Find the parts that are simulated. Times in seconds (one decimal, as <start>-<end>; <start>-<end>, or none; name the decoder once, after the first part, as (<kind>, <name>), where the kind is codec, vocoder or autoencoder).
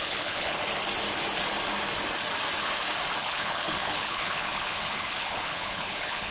0.0-0.6 (codec, HILCodec); 3.2-6.3